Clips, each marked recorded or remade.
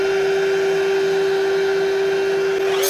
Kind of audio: recorded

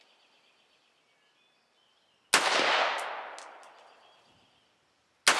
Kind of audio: recorded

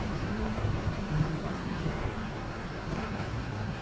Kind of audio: remade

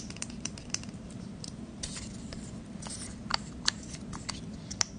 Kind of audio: recorded